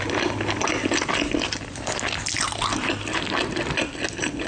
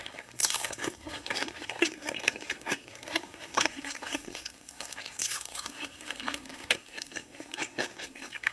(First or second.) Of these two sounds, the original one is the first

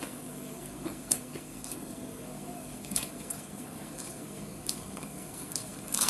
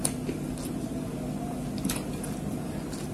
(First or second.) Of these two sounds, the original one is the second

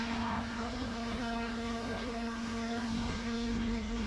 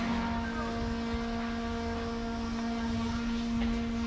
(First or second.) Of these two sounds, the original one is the second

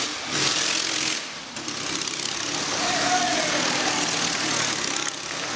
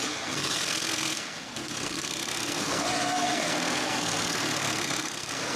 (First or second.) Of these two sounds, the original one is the first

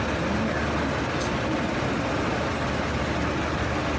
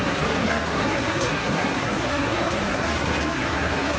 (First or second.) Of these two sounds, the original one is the first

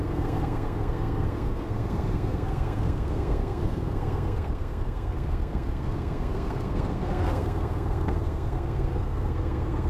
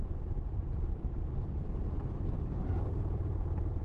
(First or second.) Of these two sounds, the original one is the second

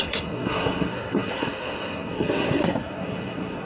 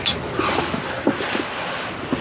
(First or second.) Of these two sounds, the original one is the second